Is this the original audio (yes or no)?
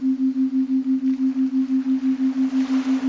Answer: yes